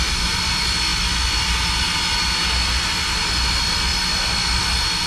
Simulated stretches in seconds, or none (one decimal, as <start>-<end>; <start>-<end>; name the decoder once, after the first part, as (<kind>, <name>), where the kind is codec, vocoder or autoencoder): none